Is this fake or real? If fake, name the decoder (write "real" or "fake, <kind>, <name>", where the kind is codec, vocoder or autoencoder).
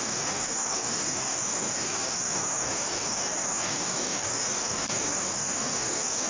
fake, codec, DAC